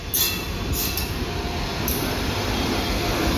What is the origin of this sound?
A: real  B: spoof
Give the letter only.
A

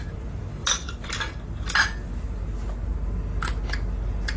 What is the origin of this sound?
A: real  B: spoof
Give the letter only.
A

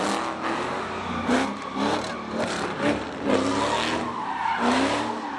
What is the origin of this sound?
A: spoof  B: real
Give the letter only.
B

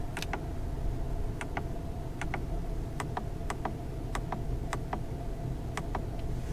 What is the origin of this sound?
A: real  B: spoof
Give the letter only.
A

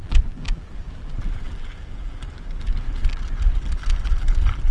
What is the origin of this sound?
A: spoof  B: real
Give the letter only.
A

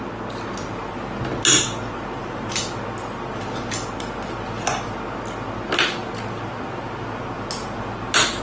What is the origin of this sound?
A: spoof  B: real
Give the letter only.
B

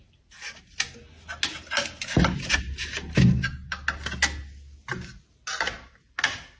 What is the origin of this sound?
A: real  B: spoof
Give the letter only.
A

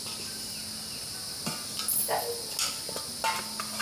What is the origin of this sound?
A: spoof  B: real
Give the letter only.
B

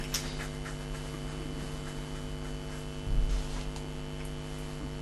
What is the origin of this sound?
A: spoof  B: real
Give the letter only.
B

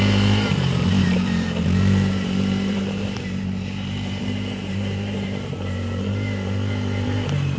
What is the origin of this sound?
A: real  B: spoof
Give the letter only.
B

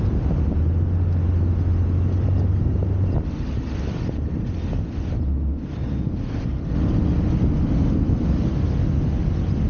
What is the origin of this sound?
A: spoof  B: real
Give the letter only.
B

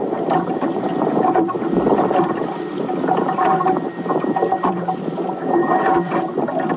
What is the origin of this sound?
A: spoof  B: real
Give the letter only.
A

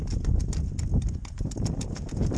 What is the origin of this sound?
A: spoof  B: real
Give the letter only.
B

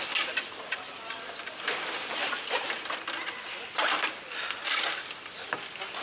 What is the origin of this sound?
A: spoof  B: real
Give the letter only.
B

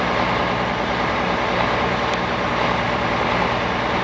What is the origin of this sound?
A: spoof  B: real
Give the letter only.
B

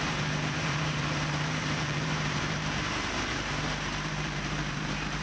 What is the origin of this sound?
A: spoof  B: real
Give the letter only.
A